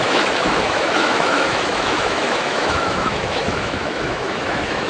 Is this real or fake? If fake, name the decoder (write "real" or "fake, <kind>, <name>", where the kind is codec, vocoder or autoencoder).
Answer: fake, autoencoder, DAC-VAE